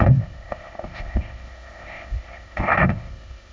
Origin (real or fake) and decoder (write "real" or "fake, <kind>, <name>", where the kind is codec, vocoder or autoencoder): fake, codec, ZipCodec